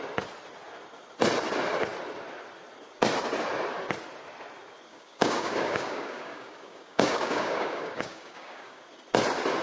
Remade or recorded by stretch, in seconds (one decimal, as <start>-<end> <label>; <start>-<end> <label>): 0.0-4.9 recorded; 4.9-8.8 remade; 8.8-9.6 recorded